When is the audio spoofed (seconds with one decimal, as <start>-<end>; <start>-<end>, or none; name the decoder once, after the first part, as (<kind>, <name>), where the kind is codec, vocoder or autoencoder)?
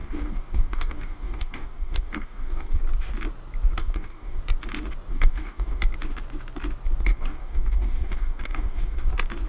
0.0-2.8 (codec, DAC); 3.8-4.4; 5.1-5.8; 7.1-9.1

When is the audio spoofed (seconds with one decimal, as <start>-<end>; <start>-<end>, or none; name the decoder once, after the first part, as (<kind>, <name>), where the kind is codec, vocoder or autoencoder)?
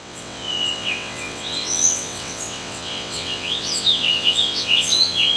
0.0-5.4 (vocoder, WaveNeXt)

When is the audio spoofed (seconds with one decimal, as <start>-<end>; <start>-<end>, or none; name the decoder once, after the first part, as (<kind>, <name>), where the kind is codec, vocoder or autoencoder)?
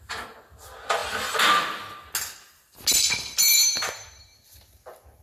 none